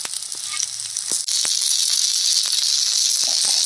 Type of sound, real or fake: real